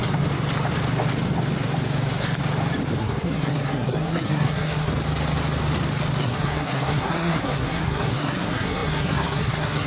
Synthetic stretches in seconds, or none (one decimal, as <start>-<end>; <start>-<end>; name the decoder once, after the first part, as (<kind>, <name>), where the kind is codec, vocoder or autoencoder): 3.0-4.9 (codec, SNAC); 6.2-9.9